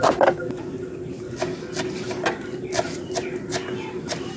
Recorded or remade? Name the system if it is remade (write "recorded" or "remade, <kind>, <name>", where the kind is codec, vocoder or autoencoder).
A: recorded